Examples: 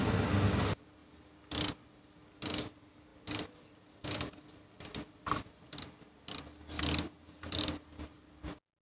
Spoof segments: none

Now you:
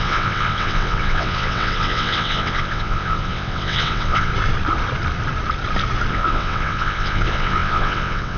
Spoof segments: 0.0-4.3 (vocoder, WaveNeXt); 6.1-8.4